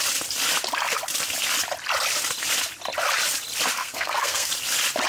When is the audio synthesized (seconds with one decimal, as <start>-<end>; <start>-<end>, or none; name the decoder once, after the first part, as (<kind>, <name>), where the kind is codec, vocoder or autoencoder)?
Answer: 3.8-4.5 (codec, SNAC)